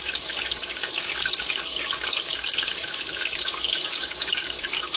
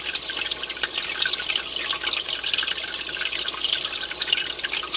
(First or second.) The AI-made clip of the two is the first